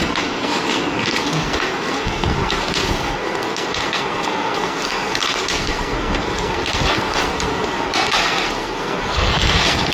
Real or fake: fake